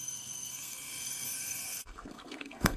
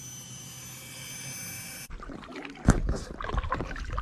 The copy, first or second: first